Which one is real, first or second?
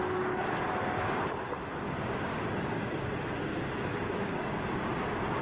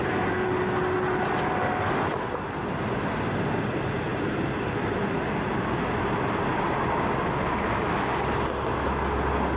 second